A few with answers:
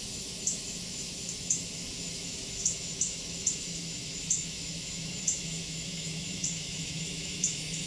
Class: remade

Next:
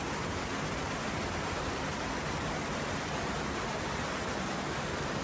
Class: recorded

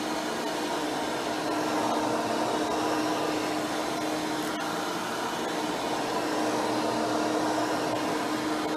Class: recorded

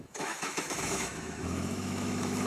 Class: remade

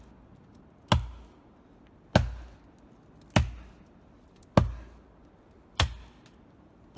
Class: recorded